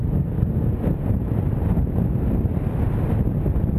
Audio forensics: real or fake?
fake